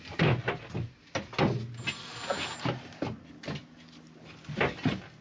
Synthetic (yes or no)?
no